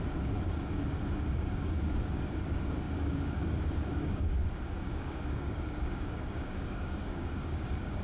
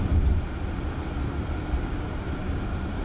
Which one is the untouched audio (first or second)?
second